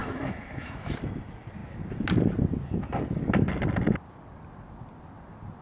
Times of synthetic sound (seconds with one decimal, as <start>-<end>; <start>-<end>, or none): 0.0-1.0